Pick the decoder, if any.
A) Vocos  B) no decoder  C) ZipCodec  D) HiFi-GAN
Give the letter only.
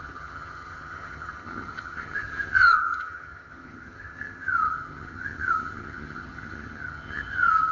D